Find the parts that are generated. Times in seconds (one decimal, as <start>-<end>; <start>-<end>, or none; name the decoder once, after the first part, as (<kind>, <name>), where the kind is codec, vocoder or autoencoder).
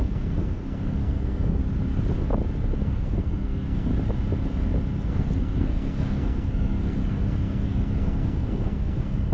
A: 0.0-1.6 (codec, SNAC); 2.8-3.9; 5.0-9.3